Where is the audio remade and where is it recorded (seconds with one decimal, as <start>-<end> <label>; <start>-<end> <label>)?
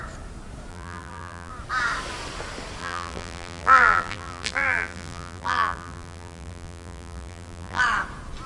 0.0-0.7 recorded; 0.7-1.5 remade; 1.5-2.8 recorded; 2.8-7.8 remade; 7.8-8.5 recorded